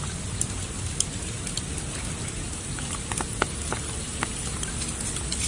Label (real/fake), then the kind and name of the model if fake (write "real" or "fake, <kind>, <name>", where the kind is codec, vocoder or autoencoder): real